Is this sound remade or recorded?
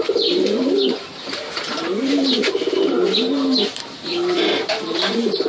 remade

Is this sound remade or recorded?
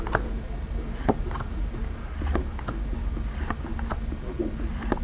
recorded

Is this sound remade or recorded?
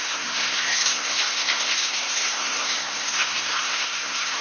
remade